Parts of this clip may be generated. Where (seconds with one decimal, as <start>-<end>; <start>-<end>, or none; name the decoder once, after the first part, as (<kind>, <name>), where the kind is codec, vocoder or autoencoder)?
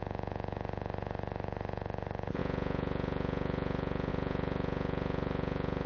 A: 0.0-5.9 (vocoder, Vocos)